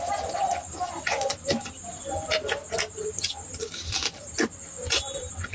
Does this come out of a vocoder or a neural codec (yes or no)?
no